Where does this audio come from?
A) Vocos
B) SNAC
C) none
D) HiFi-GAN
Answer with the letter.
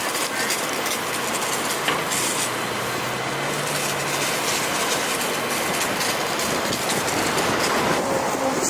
C